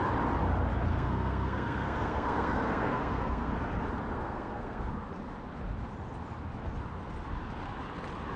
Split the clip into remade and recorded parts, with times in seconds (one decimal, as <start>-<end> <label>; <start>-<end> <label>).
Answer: 0.0-0.9 recorded; 0.9-3.5 remade; 3.5-4.1 recorded; 4.1-4.8 remade; 4.8-8.4 recorded